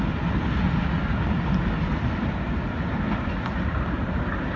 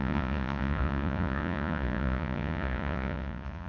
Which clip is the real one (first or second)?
first